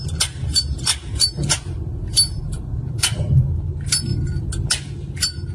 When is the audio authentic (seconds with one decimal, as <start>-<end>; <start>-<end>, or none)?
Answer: 0.0-0.9; 3.6-5.5